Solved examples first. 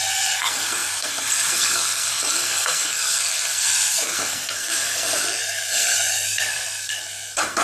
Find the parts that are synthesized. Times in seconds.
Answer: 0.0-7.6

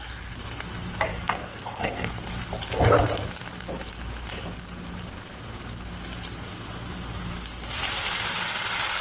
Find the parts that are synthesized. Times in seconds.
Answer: 1.1-2.2

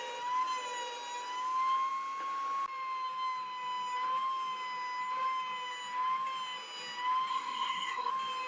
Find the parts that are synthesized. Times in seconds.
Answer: 7.3-8.1

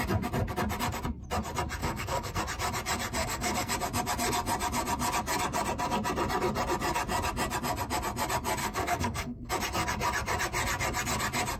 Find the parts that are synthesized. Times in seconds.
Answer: 1.8-2.4; 3.2-3.7; 8.6-9.5

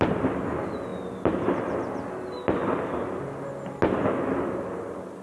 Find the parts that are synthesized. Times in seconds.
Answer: none

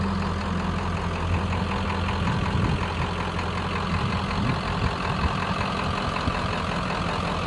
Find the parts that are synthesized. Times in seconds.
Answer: none

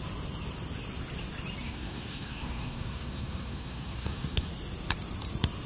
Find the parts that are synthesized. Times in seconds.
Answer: 1.6-4.5